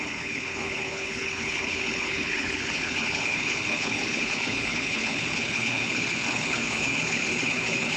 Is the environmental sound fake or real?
fake